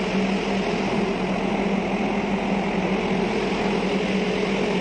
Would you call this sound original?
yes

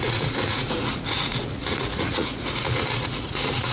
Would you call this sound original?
no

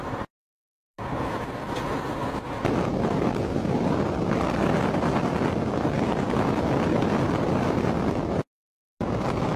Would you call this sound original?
yes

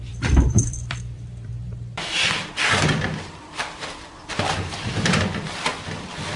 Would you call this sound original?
no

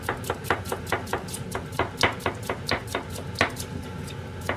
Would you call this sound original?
yes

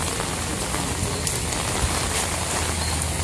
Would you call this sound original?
yes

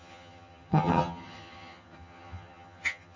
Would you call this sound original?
no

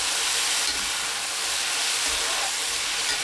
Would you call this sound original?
yes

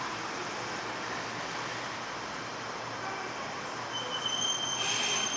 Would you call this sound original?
yes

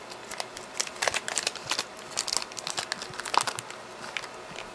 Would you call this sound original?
yes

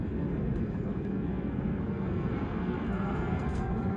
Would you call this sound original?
no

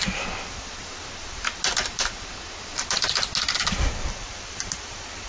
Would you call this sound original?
yes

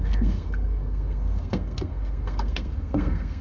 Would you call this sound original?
no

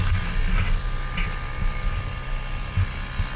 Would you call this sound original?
yes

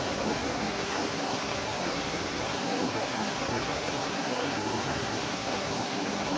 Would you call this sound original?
no